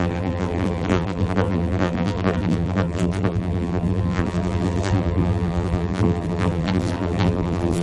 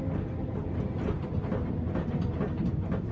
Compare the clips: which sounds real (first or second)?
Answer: second